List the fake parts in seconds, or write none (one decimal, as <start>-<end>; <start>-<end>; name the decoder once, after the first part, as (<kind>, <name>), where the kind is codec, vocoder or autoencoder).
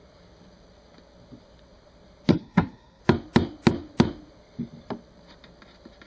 2.3-3.0 (codec, SNAC)